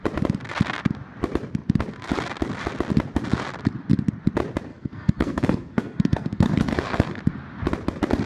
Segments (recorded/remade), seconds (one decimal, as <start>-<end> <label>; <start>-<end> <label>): 0.0-4.7 recorded; 4.7-7.2 remade; 7.2-8.3 recorded